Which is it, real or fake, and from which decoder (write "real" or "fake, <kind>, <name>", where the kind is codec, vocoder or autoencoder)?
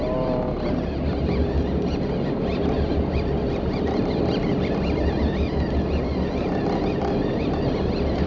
real